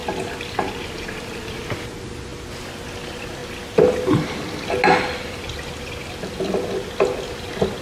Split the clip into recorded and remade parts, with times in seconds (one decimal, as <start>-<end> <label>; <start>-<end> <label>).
0.0-7.8 recorded